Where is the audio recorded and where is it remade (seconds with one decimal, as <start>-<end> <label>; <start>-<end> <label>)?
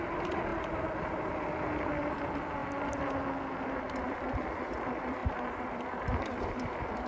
0.0-2.6 remade; 2.6-4.0 recorded; 4.0-7.1 remade